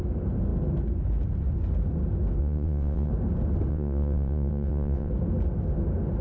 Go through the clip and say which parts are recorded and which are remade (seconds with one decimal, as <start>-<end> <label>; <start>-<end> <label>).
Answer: 0.0-2.4 recorded; 2.4-3.1 remade; 3.1-3.7 recorded; 3.7-5.1 remade; 5.1-6.2 recorded